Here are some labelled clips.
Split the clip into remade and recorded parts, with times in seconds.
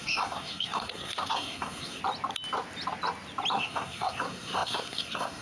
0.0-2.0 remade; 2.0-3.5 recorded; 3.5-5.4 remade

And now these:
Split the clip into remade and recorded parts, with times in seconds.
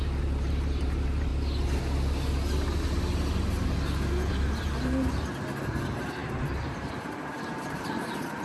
0.0-1.3 remade; 1.3-4.3 recorded; 4.3-8.4 remade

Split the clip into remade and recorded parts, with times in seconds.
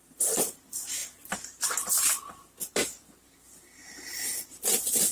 0.0-5.1 recorded